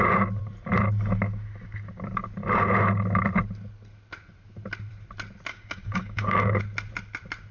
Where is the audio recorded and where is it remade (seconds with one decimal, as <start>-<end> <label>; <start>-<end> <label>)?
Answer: 0.0-5.5 recorded; 5.5-6.6 remade; 6.6-7.5 recorded